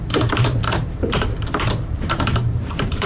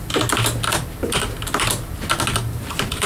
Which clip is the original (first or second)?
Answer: second